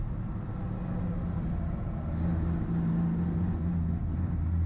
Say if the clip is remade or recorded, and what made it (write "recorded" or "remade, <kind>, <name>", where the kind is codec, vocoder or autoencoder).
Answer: recorded